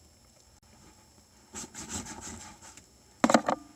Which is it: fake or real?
real